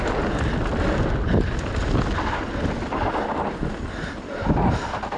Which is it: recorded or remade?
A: recorded